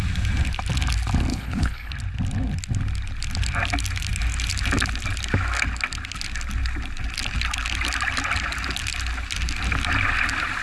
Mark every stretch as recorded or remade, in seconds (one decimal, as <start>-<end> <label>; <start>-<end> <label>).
0.0-1.3 recorded; 1.3-1.9 remade; 1.9-10.6 recorded